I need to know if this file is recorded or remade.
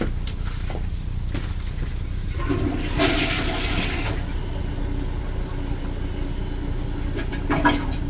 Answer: recorded